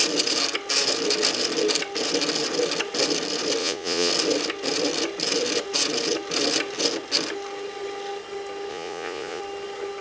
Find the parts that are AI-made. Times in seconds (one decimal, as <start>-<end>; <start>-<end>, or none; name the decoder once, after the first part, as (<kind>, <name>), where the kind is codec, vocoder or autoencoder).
3.6-4.1 (vocoder, Vocos); 8.7-9.4